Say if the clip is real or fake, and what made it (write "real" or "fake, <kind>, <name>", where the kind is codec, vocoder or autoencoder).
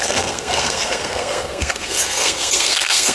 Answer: fake, codec, SNAC